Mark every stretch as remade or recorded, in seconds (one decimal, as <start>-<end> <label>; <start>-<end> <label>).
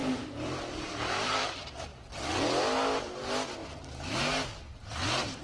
0.0-1.4 remade; 1.4-3.6 recorded; 3.6-4.2 remade; 4.2-4.7 recorded; 4.7-5.4 remade